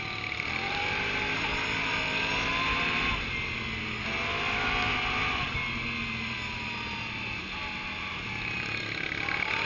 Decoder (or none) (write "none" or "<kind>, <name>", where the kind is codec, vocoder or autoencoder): none